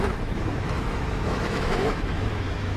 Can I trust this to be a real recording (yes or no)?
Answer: no